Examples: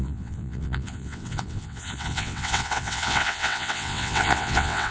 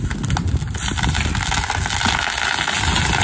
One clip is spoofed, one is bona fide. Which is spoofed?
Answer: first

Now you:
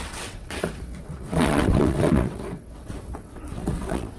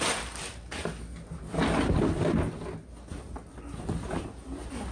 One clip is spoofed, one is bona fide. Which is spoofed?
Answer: first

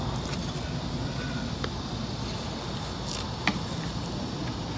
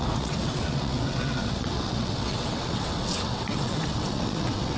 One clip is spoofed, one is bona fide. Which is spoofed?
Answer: second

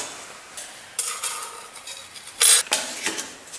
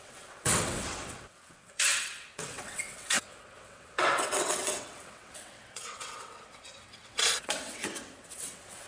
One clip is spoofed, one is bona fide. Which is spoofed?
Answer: second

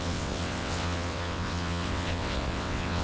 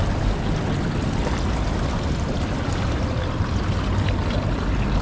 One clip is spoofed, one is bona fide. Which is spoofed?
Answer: first